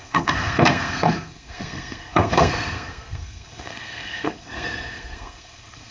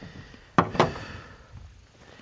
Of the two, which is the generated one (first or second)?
first